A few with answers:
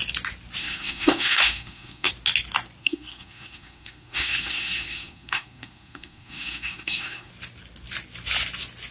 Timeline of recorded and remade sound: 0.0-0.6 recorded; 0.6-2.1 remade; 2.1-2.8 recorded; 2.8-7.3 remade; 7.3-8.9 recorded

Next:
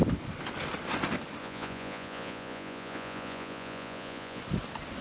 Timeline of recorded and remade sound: 0.0-1.4 recorded; 1.4-4.4 remade; 4.4-5.0 recorded

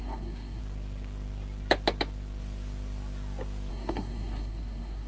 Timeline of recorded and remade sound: 0.0-0.6 remade; 0.6-3.7 recorded; 3.7-5.1 remade